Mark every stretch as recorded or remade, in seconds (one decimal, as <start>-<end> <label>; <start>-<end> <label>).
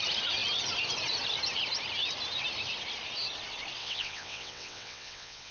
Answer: 0.0-3.8 recorded; 3.8-5.5 remade